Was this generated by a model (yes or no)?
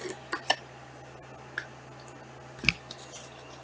no